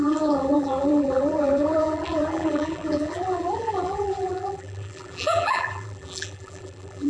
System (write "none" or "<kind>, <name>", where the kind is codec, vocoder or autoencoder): vocoder, BigVGAN v2